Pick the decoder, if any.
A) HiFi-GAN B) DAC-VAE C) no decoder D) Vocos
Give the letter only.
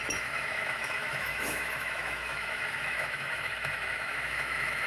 B